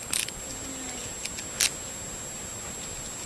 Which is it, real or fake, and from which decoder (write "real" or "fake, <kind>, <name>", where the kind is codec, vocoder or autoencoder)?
real